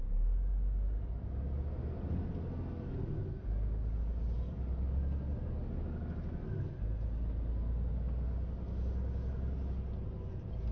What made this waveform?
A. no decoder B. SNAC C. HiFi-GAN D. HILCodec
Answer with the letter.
A